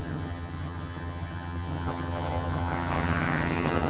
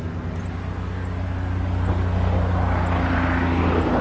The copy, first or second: first